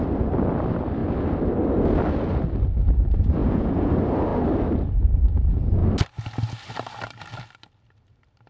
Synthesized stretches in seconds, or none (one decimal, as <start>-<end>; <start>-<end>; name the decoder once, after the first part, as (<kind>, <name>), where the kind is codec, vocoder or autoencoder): 3.4-3.9 (vocoder, Vocos)